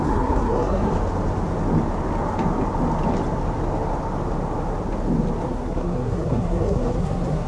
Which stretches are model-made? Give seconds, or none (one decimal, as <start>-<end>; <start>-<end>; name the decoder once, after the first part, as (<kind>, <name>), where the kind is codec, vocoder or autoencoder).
0.0-0.9 (codec, SNAC); 5.4-7.5